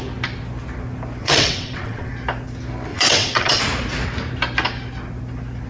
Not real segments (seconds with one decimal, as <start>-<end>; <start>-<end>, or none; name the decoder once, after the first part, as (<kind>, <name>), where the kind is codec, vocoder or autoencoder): 1.2-2.1 (vocoder, WaveNeXt); 2.9-3.6